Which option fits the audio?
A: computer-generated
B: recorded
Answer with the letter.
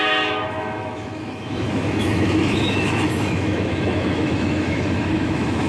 A